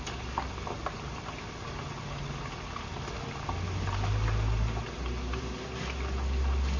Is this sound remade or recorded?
recorded